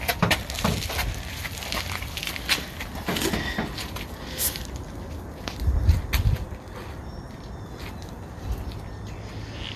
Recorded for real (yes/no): yes